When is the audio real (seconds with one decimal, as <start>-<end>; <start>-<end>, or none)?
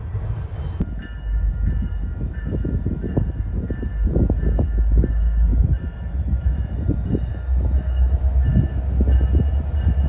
0.0-5.5; 6.8-7.3; 8.5-10.1